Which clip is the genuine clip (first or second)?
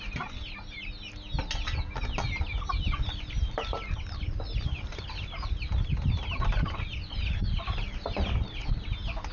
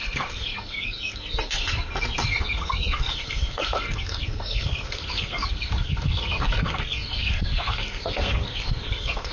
first